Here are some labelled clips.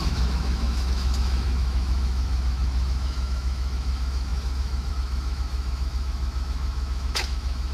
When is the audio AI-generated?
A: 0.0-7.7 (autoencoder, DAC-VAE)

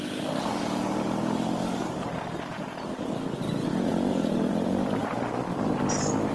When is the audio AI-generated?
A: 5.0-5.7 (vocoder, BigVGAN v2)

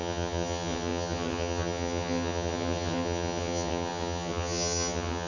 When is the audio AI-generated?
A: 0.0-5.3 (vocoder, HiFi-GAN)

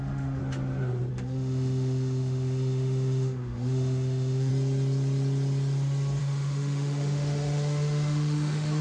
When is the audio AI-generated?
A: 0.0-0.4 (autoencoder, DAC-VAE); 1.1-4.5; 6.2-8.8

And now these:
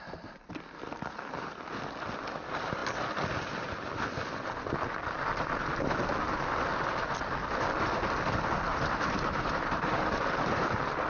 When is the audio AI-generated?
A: 8.7-9.9 (vocoder, BigVGAN v2)